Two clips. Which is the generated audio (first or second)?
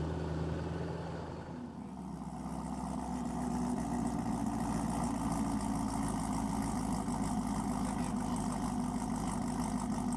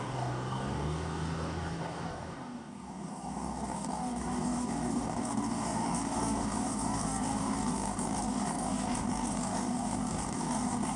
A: second